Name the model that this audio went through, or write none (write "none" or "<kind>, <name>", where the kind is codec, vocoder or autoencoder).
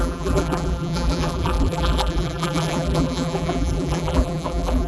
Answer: vocoder, BigVGAN v2